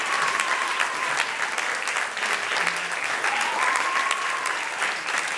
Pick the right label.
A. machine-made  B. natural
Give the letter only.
B